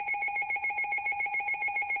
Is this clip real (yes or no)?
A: no